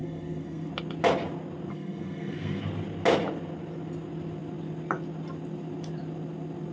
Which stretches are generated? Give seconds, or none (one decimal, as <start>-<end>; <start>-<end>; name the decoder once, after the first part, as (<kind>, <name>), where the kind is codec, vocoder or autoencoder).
0.0-0.7 (codec, SNAC); 1.7-2.6